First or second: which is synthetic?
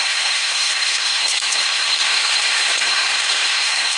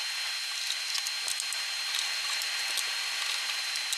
first